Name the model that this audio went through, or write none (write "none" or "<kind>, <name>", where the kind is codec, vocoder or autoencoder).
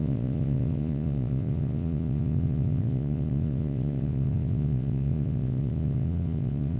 vocoder, Vocos